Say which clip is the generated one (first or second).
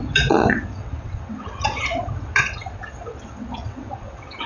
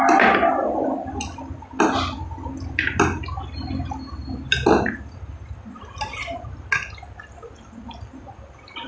first